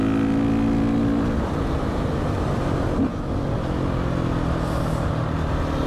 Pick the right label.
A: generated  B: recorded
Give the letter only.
B